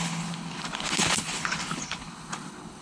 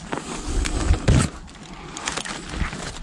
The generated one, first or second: first